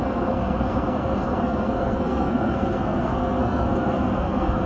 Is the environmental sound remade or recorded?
remade